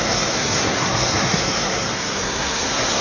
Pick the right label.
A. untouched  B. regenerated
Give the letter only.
B